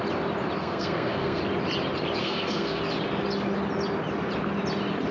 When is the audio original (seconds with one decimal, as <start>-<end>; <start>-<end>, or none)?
0.0-0.6; 1.4-2.2; 2.8-5.1